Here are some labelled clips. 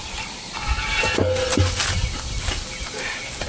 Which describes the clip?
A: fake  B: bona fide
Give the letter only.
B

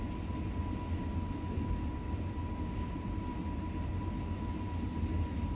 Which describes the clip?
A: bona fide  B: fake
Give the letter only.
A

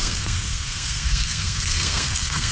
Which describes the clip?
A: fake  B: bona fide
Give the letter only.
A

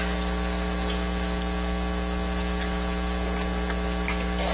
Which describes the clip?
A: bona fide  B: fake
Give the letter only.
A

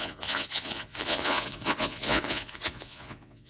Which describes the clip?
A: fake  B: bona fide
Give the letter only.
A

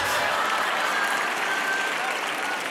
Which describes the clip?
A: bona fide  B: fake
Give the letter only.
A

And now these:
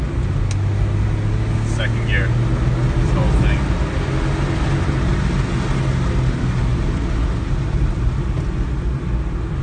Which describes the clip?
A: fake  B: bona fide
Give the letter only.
B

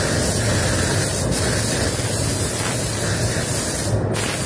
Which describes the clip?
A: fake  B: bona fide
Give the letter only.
B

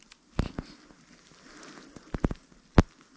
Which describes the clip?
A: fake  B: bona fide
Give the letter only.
B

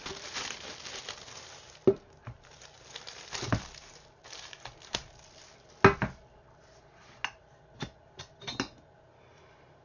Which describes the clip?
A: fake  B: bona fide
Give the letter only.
B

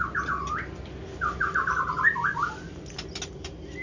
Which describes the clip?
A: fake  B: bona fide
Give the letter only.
B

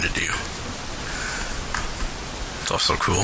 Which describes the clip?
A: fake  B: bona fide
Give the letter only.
B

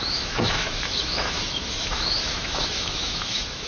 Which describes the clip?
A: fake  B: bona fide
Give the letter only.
A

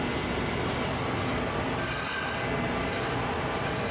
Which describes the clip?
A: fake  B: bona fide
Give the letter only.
B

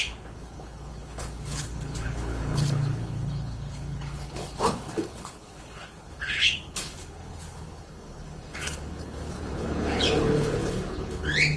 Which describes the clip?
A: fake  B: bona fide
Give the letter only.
A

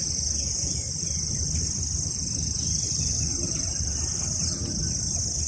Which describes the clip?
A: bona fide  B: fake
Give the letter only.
B